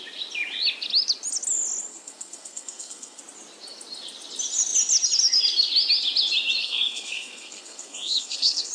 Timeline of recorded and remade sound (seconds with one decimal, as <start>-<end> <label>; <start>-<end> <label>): 0.0-1.9 recorded; 1.9-3.2 remade; 3.2-6.6 recorded; 6.6-8.7 remade